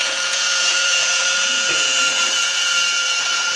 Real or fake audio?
fake